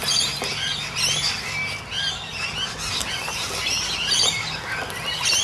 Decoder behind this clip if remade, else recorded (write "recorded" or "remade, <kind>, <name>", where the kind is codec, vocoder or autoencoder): recorded